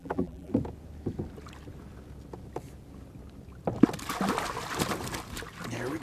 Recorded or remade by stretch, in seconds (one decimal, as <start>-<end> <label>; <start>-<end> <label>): 0.0-0.5 remade; 0.5-6.0 recorded